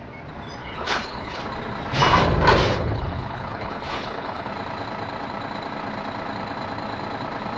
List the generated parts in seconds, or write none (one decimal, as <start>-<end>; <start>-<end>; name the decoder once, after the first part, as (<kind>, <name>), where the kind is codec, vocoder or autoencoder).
0.6-1.4 (codec, HILCodec); 2.7-4.5